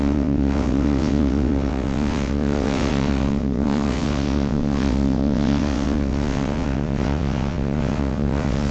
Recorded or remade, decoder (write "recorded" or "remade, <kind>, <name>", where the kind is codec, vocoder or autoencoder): remade, vocoder, WaveNeXt